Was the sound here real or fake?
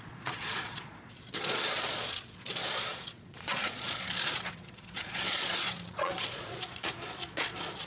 fake